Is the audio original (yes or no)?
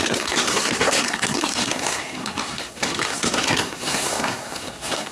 no